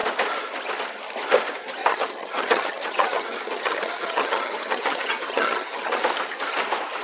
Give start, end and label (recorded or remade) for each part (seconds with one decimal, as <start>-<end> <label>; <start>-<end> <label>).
0.0-1.8 recorded; 1.8-6.0 remade; 6.0-7.0 recorded

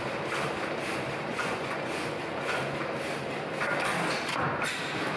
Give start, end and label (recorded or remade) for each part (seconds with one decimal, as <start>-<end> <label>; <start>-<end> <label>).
0.0-1.3 recorded; 1.3-2.8 remade; 2.8-5.2 recorded